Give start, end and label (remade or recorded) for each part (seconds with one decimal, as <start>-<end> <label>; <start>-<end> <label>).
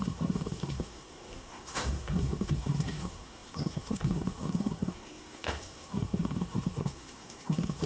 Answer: 0.0-7.9 remade